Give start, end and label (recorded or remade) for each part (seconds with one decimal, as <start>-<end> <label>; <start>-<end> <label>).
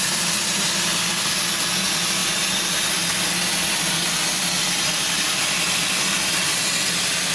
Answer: 0.0-7.3 recorded